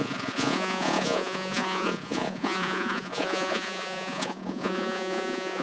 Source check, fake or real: fake